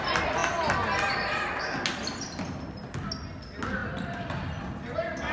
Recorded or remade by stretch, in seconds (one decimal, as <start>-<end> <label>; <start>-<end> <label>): 0.0-3.8 recorded; 3.8-4.7 remade; 4.7-5.3 recorded